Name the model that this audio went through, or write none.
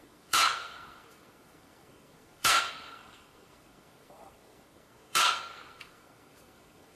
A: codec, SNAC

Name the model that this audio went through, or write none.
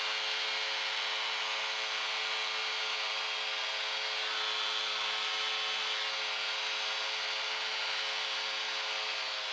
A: none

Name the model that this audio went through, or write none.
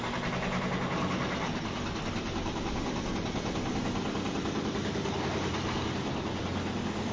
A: none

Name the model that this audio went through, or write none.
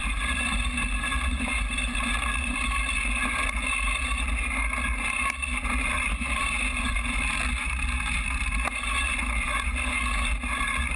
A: none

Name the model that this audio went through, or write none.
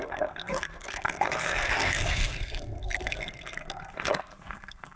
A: codec, SNAC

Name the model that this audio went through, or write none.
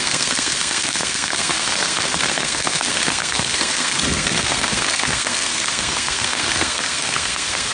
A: codec, SNAC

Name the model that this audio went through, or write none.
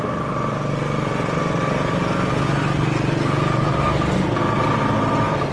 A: none